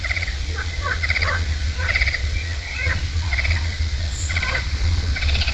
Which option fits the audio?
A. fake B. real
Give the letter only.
A